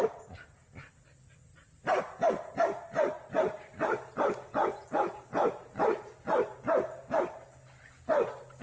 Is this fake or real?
real